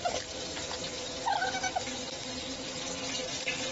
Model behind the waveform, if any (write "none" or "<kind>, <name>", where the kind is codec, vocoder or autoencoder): none